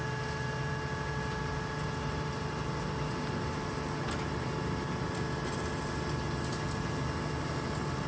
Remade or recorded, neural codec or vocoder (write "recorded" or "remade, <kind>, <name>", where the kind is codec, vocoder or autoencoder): recorded